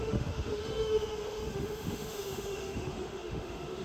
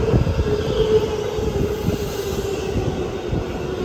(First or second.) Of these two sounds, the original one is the second